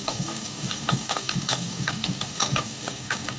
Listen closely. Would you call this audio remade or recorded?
remade